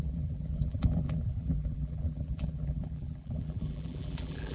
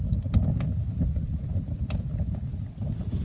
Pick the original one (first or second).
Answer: second